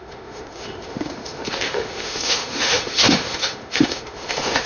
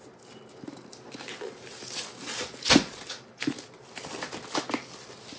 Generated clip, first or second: first